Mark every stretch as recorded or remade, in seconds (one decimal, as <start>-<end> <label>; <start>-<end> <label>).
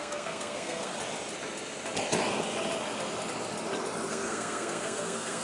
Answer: 0.0-0.9 remade; 0.9-4.1 recorded; 4.1-5.4 remade